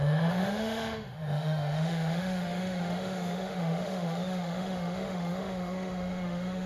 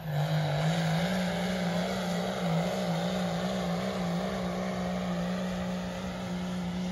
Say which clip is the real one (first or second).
second